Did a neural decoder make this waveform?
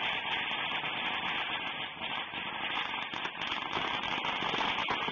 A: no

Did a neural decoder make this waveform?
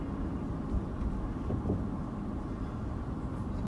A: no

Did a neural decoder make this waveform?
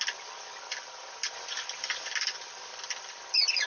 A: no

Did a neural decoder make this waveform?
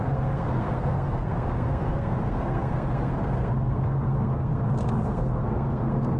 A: yes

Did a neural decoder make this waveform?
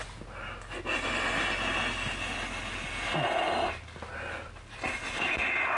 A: no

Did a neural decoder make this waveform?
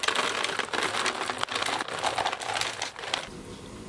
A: no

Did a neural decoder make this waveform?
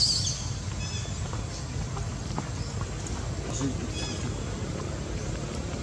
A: no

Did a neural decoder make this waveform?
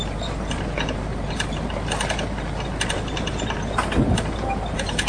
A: no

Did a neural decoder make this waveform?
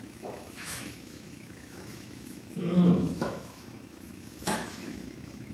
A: yes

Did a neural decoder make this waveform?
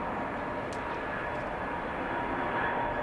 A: no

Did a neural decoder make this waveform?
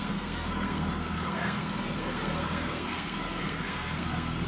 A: yes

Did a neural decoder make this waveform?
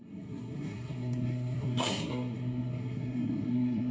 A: yes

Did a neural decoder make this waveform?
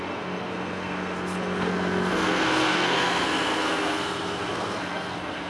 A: yes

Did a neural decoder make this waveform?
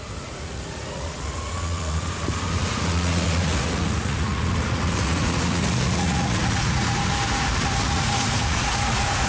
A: yes